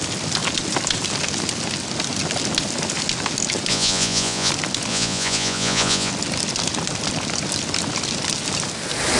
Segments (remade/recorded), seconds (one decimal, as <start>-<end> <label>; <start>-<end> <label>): 0.0-3.7 recorded; 3.7-4.5 remade; 4.5-4.9 recorded; 4.9-6.1 remade; 6.1-9.2 recorded